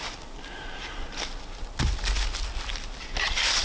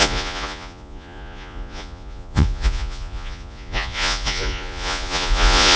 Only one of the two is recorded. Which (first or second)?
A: first